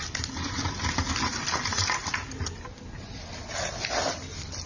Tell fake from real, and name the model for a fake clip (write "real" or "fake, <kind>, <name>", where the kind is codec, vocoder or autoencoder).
real